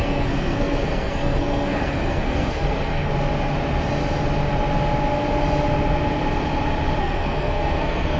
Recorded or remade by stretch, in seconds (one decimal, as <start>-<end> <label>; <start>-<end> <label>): 0.0-3.1 remade; 3.1-7.0 recorded; 7.0-8.2 remade